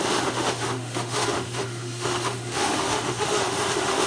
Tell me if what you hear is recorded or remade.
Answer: remade